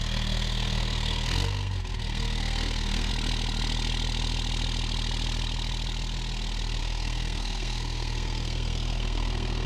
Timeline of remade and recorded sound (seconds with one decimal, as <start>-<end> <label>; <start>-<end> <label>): 0.0-3.1 remade; 3.1-6.8 recorded; 6.8-9.7 remade